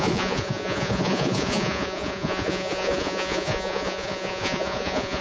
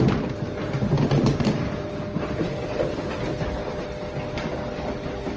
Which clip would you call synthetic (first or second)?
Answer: first